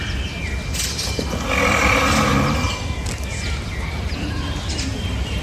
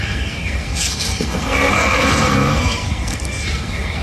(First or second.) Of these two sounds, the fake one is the second